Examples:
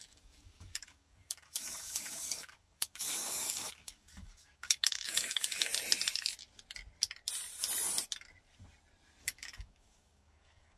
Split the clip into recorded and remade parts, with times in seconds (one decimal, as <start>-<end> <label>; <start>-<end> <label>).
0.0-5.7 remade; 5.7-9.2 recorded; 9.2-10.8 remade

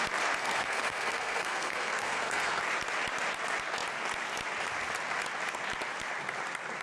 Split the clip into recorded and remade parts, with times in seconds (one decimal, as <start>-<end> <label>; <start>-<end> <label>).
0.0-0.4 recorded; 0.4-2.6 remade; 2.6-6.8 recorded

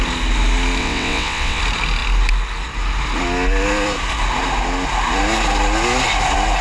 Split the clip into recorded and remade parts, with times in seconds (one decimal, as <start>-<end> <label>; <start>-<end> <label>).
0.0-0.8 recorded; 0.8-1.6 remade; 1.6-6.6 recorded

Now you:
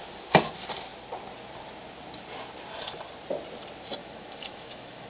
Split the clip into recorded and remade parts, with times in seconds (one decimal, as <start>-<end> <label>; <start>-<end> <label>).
0.0-4.0 recorded; 4.0-5.1 remade

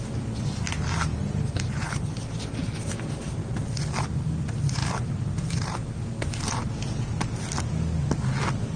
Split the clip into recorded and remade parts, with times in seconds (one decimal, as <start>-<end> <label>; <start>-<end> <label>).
0.0-1.1 recorded; 1.1-2.9 remade; 2.9-8.8 recorded

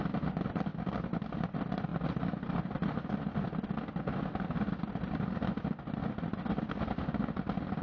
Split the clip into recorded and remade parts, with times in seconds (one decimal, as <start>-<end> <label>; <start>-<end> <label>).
0.0-7.8 recorded

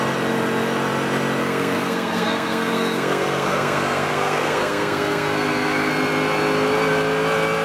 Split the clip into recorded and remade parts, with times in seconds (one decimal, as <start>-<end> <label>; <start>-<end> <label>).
0.0-1.4 recorded; 1.4-5.9 remade; 5.9-7.6 recorded